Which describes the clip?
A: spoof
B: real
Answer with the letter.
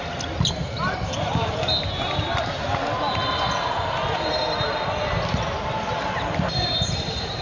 B